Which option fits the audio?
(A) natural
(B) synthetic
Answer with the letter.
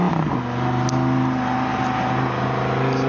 A